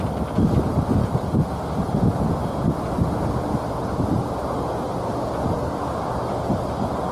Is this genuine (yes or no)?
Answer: yes